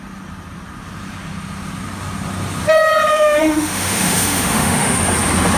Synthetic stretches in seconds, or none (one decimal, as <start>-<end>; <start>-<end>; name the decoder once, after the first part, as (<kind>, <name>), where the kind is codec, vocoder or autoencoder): 3.1-5.0 (autoencoder, DAC-VAE)